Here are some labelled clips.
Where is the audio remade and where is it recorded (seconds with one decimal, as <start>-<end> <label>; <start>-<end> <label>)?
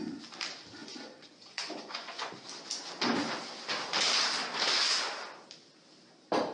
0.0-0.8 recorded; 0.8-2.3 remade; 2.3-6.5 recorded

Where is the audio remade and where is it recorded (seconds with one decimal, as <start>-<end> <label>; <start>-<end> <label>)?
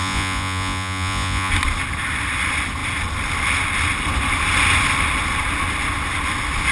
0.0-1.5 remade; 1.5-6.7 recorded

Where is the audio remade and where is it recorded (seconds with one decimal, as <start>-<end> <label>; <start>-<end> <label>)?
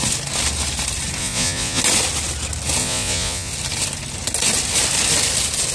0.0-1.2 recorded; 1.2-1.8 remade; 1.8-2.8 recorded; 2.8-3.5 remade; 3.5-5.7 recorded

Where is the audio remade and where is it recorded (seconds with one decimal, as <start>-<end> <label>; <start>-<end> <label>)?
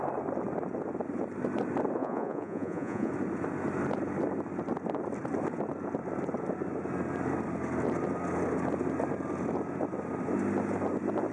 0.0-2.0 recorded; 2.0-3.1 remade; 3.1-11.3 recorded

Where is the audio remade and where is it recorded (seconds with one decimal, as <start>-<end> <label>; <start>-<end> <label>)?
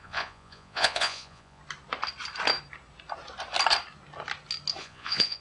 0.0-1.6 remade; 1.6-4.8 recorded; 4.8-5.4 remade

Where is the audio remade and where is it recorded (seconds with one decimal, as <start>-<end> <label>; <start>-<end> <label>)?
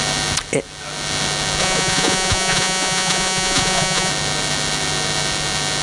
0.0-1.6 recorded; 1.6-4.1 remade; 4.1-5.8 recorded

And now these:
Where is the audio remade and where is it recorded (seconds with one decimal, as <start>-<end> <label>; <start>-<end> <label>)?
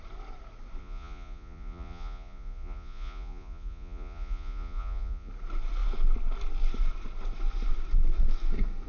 0.0-0.8 recorded; 0.8-5.3 remade; 5.3-8.9 recorded